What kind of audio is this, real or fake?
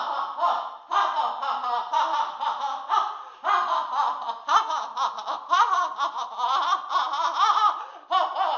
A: real